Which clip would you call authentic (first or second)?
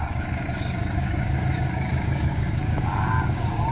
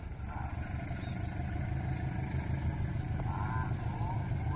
second